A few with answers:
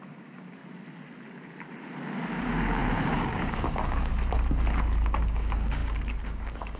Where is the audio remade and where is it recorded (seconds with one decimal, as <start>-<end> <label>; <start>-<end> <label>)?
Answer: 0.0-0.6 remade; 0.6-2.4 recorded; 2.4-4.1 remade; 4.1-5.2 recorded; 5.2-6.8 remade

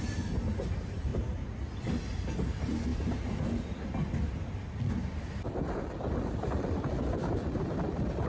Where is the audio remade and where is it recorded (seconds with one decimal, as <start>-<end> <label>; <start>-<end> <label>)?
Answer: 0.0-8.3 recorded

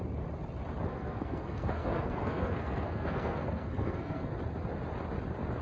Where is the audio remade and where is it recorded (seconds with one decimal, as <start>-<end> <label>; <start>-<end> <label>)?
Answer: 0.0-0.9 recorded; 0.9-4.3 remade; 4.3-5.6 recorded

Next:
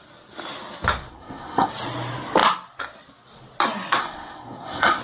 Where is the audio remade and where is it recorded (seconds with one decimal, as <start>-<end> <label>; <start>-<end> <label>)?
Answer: 0.0-1.1 recorded; 1.1-1.7 remade; 1.7-4.0 recorded; 4.0-5.0 remade

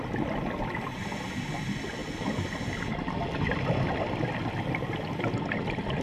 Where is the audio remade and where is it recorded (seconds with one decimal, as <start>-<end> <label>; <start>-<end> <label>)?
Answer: 0.0-6.0 recorded